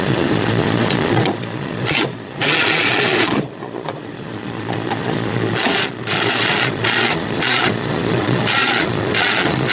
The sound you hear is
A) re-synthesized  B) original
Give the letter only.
A